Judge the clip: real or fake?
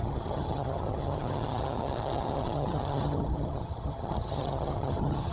fake